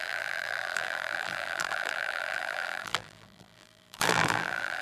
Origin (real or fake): fake